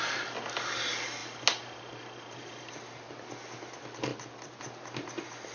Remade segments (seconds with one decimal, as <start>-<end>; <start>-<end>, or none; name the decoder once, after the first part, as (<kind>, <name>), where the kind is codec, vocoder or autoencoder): none